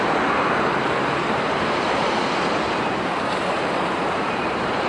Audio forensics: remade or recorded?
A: remade